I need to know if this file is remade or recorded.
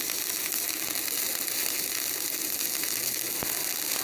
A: recorded